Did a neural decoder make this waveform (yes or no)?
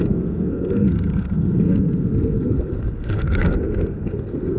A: yes